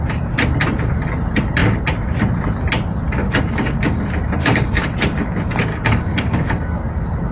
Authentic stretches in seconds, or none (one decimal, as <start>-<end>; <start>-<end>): 0.0-3.2; 4.0-4.4; 5.0-5.7; 6.7-7.3